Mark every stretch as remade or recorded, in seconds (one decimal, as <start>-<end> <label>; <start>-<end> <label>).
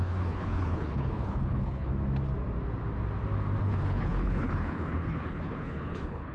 0.0-1.9 remade; 1.9-3.6 recorded; 3.6-6.3 remade